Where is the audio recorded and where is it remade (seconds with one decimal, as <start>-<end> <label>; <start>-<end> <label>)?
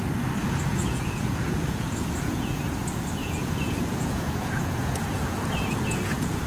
0.0-0.4 recorded; 0.4-2.8 remade; 2.8-3.2 recorded; 3.2-6.5 remade